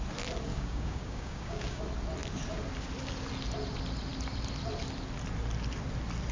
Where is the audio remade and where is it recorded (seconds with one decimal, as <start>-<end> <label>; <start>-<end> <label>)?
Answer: 0.0-0.5 recorded; 0.5-1.8 remade; 1.8-6.3 recorded